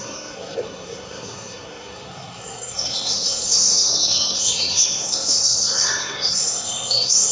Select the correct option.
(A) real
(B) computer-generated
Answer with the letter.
B